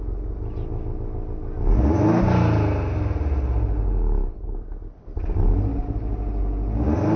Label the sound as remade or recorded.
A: recorded